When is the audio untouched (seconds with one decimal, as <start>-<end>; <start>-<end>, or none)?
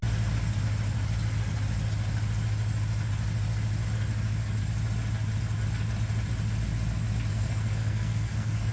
0.0-7.3